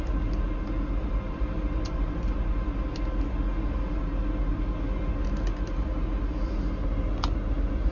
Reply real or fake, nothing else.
real